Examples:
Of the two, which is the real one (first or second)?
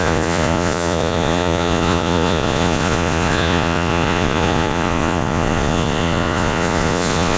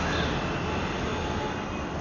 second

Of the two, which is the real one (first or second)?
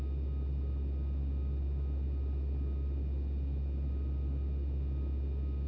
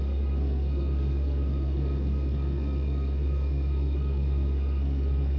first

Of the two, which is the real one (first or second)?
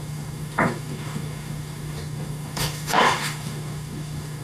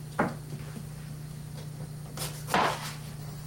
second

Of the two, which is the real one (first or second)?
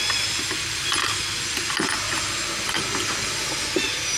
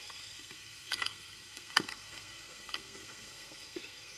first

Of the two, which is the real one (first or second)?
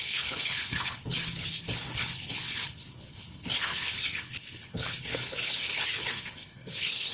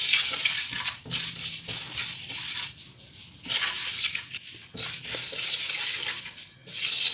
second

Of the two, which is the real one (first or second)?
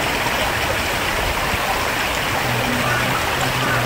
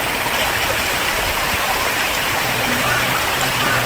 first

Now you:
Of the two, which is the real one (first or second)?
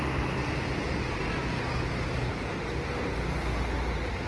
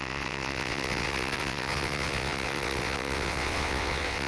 first